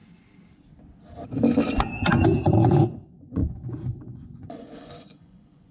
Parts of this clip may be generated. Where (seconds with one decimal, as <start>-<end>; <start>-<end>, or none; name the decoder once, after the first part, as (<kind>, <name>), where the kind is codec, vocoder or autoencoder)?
2.4-5.7 (vocoder, Vocos)